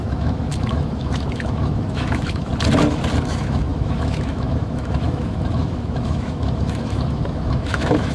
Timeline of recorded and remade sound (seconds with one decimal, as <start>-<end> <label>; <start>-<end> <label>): 0.0-2.5 remade; 2.5-3.3 recorded; 3.3-8.1 remade